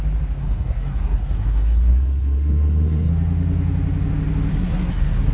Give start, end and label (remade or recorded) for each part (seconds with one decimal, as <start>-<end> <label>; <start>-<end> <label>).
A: 0.0-0.4 recorded; 0.4-3.1 remade; 3.1-4.5 recorded; 4.5-5.3 remade